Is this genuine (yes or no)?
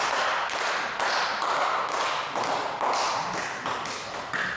yes